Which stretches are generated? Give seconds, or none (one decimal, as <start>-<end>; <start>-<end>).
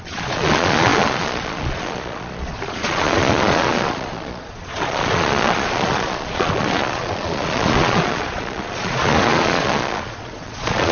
0.0-10.9